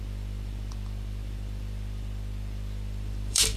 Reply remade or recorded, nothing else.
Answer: remade